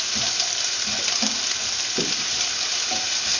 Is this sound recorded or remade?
recorded